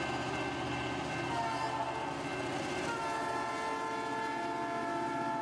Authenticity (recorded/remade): recorded